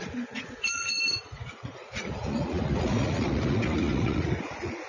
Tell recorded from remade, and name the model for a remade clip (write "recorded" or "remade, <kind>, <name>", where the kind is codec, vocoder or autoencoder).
remade, vocoder, Vocos